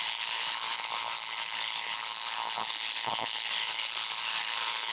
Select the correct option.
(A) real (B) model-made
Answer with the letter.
B